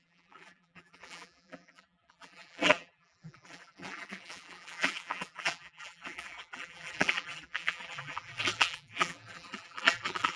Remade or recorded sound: remade